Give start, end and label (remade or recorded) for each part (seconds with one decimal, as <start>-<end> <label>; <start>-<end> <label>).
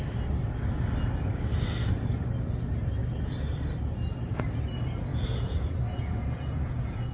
0.0-5.1 recorded; 5.1-7.1 remade